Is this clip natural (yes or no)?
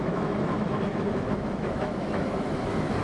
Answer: no